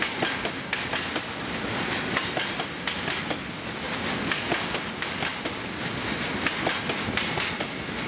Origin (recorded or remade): recorded